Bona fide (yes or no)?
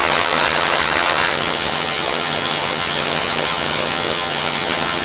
no